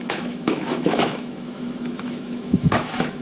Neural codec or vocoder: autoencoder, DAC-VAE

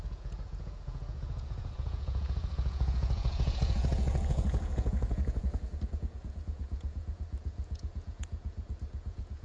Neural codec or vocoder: vocoder, Vocos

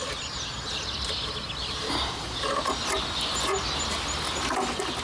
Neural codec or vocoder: none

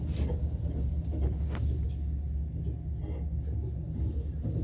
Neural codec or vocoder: none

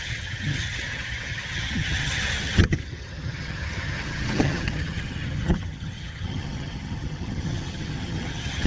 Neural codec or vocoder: vocoder, HiFi-GAN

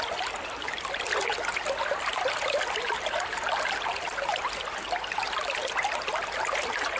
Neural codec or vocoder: none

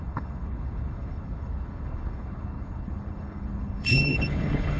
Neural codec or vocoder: codec, HILCodec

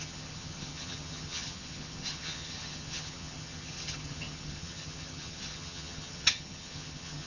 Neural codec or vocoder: vocoder, HiFi-GAN